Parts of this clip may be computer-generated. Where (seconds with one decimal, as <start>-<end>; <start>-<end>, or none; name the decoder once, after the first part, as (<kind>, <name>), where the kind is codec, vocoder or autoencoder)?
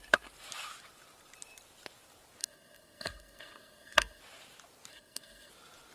2.4-4.2 (codec, SNAC); 4.9-5.5